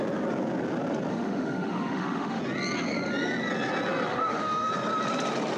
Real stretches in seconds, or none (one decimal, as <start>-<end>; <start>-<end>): 0.0-1.1; 2.4-4.1; 4.7-5.6